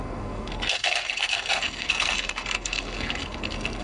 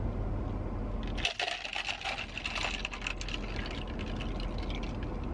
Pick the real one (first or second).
second